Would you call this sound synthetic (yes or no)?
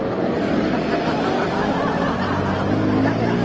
no